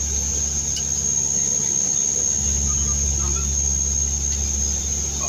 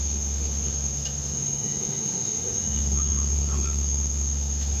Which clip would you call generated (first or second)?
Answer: second